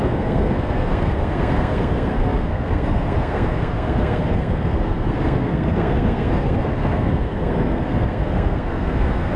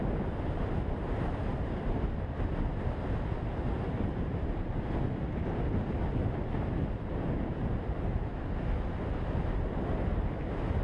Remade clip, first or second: first